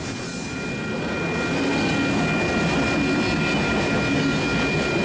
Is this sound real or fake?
real